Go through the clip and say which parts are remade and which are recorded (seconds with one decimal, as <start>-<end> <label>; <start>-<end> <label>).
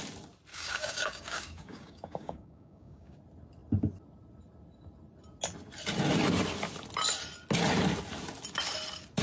0.0-0.5 recorded; 0.5-3.2 remade; 3.2-9.2 recorded